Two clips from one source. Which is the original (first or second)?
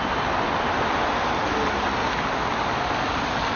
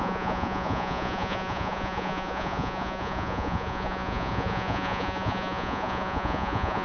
first